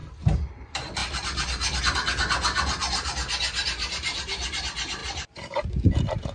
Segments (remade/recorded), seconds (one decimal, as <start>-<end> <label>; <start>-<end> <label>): 0.0-1.0 recorded; 1.0-1.8 remade; 1.8-3.6 recorded; 3.6-4.6 remade; 4.6-5.0 recorded; 5.0-5.7 remade; 5.7-6.3 recorded